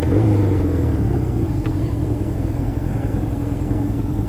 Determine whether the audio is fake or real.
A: fake